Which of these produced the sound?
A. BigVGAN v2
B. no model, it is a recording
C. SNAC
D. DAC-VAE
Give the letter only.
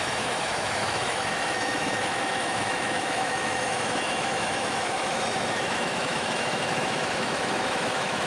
D